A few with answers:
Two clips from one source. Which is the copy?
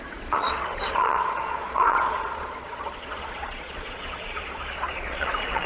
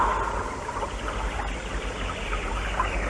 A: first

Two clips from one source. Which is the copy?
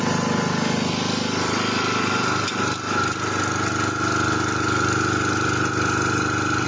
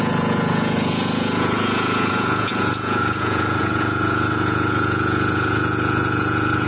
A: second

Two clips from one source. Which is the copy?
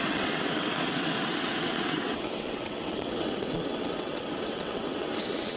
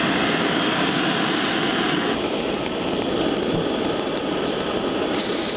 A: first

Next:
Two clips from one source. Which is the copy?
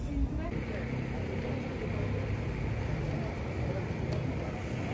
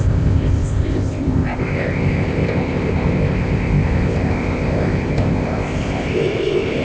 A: second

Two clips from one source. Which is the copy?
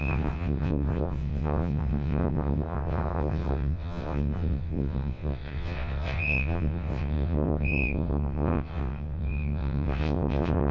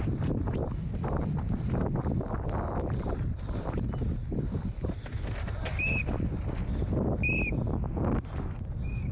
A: first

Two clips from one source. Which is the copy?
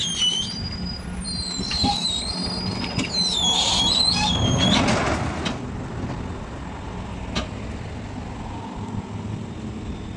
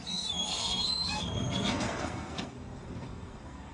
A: second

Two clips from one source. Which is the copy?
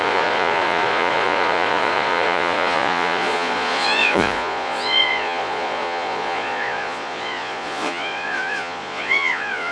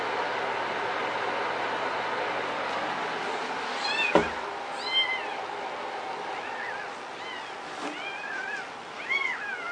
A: first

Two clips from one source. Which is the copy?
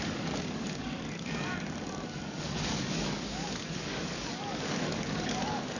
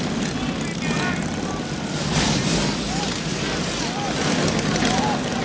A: first